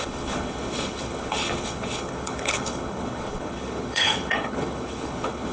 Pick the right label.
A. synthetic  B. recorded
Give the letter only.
A